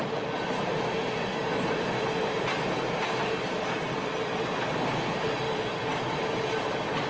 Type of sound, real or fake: real